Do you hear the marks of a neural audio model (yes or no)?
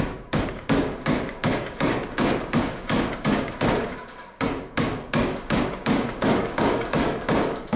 yes